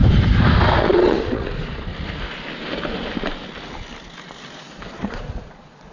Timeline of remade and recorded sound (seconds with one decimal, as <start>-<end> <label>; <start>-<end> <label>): 0.0-0.8 recorded; 0.8-1.9 remade; 1.9-4.9 recorded; 4.9-5.9 remade